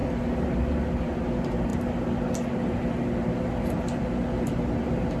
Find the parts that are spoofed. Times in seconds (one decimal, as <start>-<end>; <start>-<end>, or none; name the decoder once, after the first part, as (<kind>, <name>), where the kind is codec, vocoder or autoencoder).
none